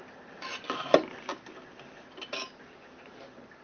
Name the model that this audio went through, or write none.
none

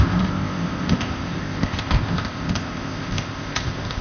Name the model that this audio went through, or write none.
codec, ZipCodec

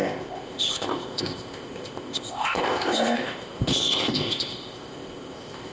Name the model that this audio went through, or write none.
codec, ZipCodec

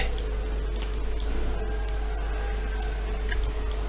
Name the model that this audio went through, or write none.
none